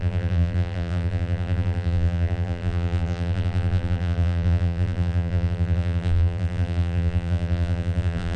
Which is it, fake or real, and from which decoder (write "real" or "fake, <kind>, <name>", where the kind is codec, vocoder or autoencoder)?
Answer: fake, vocoder, BigVGAN v2